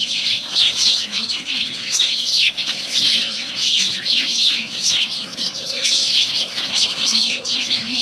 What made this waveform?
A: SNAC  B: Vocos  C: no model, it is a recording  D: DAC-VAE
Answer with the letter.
A